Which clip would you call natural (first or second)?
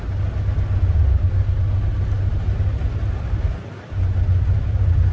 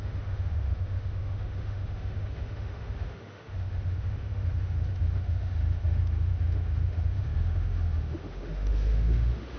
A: first